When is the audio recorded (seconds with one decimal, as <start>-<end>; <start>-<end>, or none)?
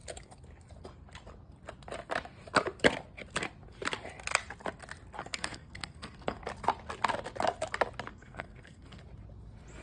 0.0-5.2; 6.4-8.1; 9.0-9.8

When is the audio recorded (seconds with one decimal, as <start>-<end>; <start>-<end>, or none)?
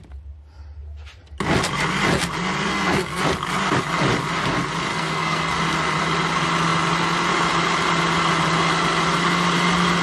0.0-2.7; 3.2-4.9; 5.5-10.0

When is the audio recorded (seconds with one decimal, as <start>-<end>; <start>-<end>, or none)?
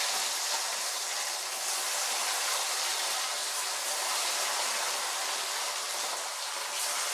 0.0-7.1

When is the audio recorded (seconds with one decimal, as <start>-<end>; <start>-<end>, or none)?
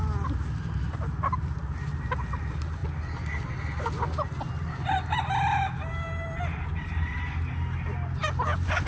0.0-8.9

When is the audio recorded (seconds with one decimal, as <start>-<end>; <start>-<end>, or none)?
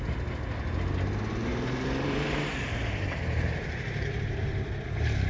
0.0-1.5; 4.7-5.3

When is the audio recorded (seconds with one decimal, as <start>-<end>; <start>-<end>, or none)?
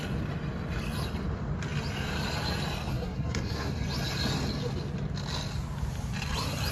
0.0-2.9; 3.7-6.7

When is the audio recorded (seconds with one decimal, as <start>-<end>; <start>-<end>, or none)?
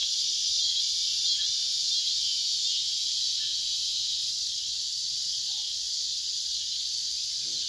0.9-4.2; 7.1-7.7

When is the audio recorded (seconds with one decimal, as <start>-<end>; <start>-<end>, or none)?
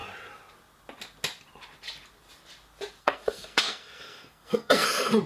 0.0-3.0